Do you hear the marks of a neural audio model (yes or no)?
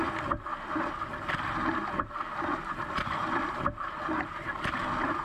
no